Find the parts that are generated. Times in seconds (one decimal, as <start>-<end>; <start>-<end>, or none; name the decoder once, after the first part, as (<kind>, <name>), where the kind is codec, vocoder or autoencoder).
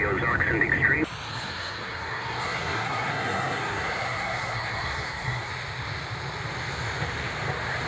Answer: 1.3-5.5 (codec, SNAC)